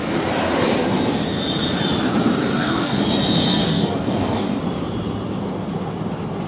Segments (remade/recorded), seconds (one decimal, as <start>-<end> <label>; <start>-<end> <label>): 0.0-2.4 recorded; 2.4-3.0 remade; 3.0-3.6 recorded; 3.6-4.6 remade; 4.6-6.5 recorded